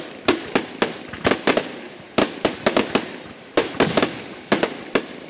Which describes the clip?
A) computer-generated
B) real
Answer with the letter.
B